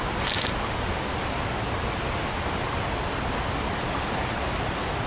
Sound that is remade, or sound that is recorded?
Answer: recorded